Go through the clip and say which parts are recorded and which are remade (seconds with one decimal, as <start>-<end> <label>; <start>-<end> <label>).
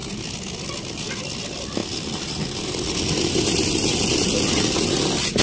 0.0-5.4 recorded